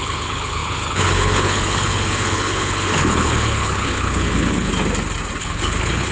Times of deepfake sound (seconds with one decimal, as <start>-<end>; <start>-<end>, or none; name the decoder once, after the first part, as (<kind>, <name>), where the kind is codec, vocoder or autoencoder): 0.0-4.7 (codec, HILCodec); 5.4-6.1